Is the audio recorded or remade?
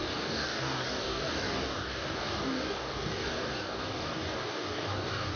remade